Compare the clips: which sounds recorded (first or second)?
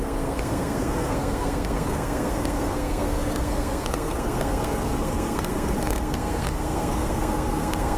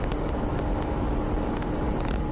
second